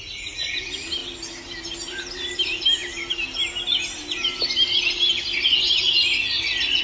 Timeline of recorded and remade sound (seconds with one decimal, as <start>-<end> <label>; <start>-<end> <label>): 0.0-6.8 recorded